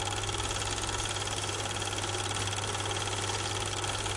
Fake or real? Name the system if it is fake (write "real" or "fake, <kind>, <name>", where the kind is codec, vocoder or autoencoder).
real